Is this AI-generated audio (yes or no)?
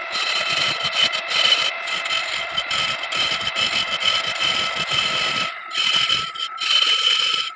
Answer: no